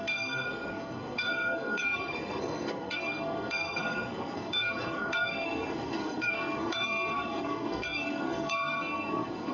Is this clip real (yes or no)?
no